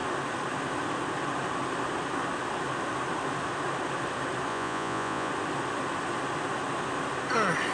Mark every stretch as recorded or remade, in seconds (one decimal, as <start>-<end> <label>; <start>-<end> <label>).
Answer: 0.0-4.5 recorded; 4.5-5.3 remade; 5.3-7.7 recorded